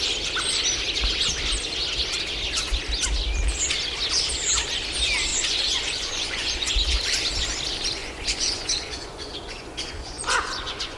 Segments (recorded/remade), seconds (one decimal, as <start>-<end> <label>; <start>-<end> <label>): 0.0-5.3 recorded; 5.3-6.7 remade; 6.7-8.0 recorded; 8.0-11.0 remade